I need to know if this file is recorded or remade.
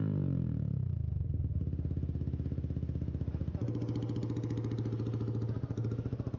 recorded